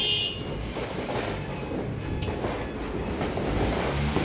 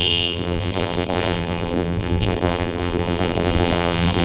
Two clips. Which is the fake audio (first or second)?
second